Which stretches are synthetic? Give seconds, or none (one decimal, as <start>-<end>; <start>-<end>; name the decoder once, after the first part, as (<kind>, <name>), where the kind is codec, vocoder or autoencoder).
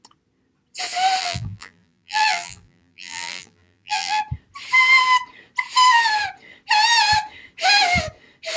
1.2-4.2 (vocoder, BigVGAN v2)